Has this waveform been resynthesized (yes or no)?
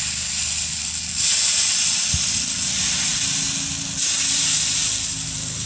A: no